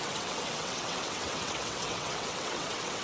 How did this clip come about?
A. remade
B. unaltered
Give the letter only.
A